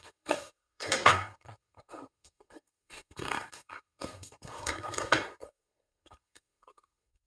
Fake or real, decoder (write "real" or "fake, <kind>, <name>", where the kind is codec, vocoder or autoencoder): fake, codec, SNAC